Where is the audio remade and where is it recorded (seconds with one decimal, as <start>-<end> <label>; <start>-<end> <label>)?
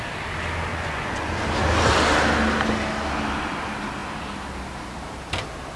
0.0-0.7 recorded; 0.7-1.3 remade; 1.3-5.8 recorded